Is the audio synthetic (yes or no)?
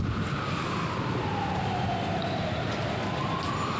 no